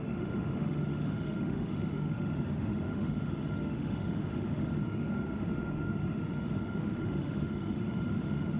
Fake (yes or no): yes